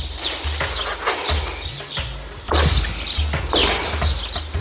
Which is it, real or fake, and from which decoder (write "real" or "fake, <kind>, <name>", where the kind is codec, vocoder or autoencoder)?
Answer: real